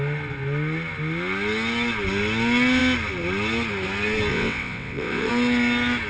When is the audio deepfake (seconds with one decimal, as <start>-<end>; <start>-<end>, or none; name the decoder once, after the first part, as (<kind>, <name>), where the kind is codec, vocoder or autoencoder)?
4.3-5.3 (vocoder, WaveNeXt)